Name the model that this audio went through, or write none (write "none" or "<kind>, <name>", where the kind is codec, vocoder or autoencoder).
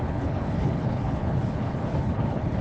codec, HILCodec